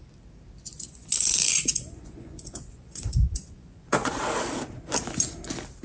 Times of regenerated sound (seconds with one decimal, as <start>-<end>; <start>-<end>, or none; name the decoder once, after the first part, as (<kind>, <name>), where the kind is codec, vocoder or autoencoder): 0.7-4.2 (vocoder, Vocos)